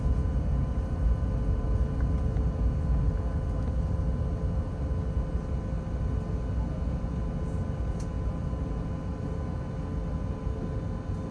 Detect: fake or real real